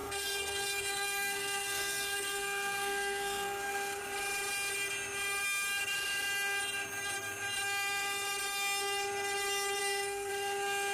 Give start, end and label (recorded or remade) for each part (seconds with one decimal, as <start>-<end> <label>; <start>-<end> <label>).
0.0-4.0 remade; 4.0-9.8 recorded; 9.8-10.3 remade; 10.3-10.9 recorded